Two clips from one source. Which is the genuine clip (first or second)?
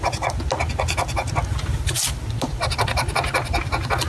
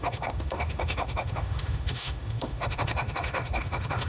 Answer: first